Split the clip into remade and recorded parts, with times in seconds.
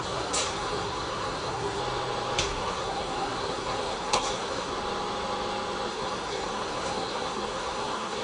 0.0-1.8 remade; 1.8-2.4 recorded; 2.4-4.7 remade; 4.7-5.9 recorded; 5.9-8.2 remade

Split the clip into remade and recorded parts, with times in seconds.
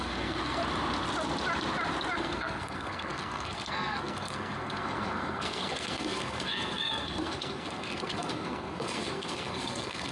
0.0-0.6 remade; 0.6-2.2 recorded; 2.2-10.1 remade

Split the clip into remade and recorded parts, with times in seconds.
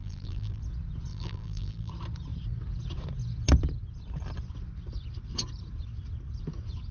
0.0-0.6 remade; 0.6-1.1 recorded; 1.1-1.9 remade; 1.9-6.9 recorded